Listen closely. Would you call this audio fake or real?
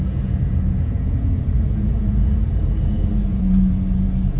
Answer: fake